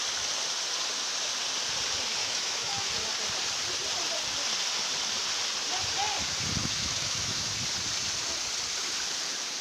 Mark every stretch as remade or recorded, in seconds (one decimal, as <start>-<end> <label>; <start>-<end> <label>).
0.0-2.2 recorded; 2.2-2.9 remade; 2.9-6.6 recorded; 6.6-7.5 remade; 7.5-9.6 recorded